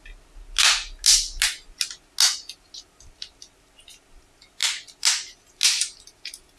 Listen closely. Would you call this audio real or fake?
real